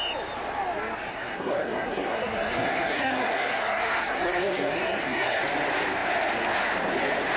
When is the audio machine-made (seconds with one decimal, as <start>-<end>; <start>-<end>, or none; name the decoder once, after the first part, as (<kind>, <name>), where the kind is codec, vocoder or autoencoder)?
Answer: 1.1-5.4 (codec, SNAC)